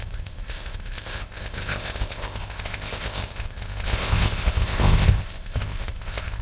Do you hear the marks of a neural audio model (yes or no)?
yes